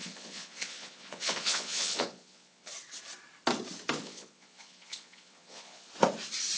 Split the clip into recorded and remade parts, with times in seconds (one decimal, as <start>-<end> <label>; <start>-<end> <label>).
0.0-2.7 remade; 2.7-4.0 recorded; 4.0-5.9 remade; 5.9-6.6 recorded